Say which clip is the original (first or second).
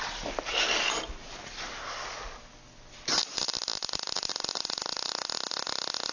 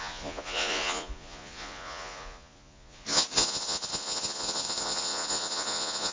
first